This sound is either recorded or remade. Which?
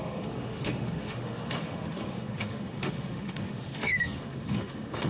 remade